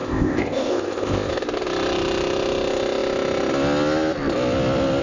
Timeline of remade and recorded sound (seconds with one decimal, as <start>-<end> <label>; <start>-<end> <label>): 0.0-1.3 remade; 1.3-5.0 recorded